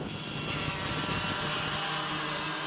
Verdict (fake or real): real